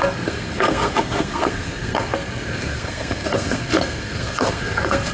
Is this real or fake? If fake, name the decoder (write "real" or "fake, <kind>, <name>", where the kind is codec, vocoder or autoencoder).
fake, codec, SNAC